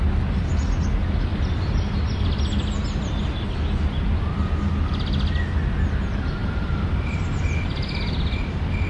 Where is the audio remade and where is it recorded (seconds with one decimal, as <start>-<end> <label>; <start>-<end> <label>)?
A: 0.0-1.3 recorded; 1.3-2.4 remade; 2.4-6.4 recorded; 6.4-7.4 remade; 7.4-8.9 recorded